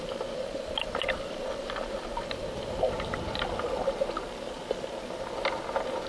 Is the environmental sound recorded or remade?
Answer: recorded